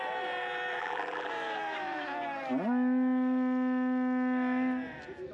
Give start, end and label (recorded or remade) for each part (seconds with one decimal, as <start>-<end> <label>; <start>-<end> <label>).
0.0-0.8 recorded; 0.8-1.3 remade; 1.3-5.3 recorded